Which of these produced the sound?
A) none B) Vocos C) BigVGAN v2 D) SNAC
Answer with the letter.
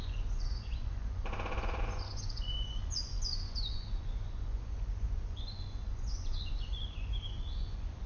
B